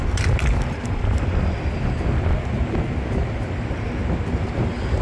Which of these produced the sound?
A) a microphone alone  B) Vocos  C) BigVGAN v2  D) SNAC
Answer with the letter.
A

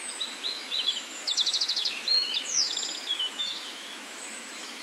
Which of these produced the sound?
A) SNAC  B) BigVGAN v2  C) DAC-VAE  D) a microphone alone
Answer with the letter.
C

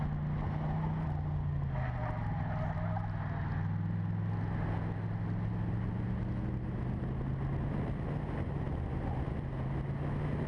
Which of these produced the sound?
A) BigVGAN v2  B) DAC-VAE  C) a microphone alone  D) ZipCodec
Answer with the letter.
C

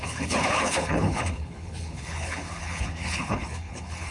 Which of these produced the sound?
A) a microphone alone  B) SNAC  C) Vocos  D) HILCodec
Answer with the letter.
D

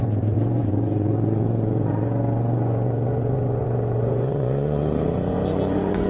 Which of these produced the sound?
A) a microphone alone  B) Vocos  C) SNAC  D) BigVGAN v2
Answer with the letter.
B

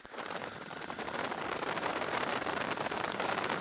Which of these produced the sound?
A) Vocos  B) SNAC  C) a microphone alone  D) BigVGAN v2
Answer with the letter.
D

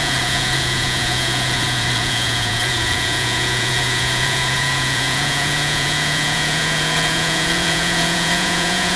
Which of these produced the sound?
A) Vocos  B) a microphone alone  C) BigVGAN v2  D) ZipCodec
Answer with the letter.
A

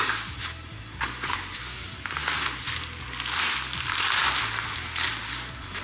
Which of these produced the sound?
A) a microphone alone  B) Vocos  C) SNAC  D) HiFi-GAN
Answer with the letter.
A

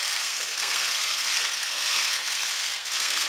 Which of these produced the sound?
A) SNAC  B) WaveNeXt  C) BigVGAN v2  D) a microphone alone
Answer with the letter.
A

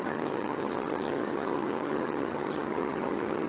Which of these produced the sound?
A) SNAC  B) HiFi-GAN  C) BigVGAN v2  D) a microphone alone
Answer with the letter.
B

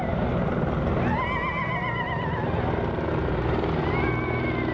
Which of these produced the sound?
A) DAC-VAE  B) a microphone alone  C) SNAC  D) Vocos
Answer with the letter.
B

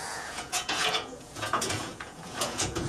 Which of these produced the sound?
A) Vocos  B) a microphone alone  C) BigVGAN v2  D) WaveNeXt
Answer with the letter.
A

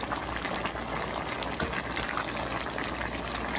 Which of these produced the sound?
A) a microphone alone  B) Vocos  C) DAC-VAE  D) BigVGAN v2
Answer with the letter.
A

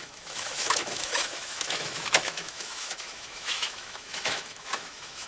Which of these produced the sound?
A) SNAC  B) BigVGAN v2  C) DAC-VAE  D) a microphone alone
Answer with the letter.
C